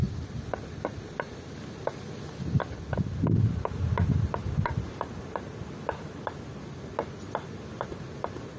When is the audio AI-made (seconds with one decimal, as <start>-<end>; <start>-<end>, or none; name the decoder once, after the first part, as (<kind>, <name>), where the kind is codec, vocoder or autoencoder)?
none